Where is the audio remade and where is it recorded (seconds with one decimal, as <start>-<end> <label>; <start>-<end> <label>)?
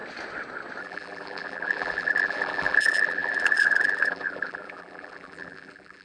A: 0.0-0.8 recorded; 0.8-6.0 remade